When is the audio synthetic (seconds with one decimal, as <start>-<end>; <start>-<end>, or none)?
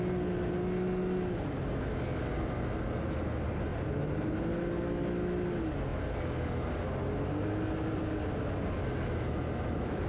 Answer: 3.7-4.6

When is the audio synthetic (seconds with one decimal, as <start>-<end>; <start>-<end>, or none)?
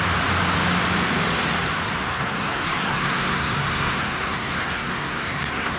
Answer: 2.1-5.8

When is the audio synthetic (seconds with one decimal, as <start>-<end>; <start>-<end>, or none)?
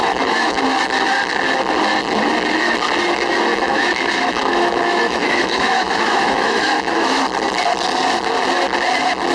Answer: 0.0-0.6; 3.5-7.2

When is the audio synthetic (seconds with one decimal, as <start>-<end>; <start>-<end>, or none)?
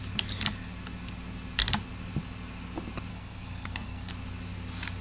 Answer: 3.1-4.1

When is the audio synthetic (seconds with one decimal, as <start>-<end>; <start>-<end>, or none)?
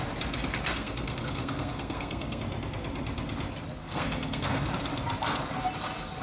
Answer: 0.7-2.4; 3.8-4.7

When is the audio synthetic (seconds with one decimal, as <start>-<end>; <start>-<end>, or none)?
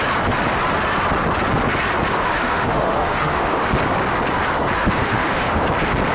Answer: 2.1-3.7; 4.8-5.6